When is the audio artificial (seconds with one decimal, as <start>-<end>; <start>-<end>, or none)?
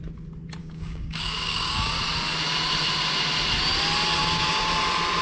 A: 0.6-1.9; 4.2-4.7